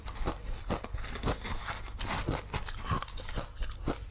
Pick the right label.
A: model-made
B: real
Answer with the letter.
B